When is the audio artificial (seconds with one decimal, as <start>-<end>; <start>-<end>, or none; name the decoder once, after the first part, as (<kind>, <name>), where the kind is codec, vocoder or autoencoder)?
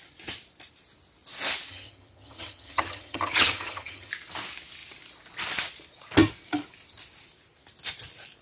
1.7-4.1 (vocoder, HiFi-GAN)